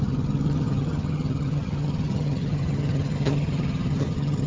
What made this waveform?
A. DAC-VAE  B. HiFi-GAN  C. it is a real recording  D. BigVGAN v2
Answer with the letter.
B